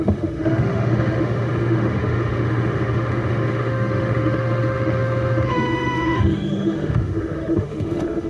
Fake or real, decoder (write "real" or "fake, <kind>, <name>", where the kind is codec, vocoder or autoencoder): fake, autoencoder, DAC-VAE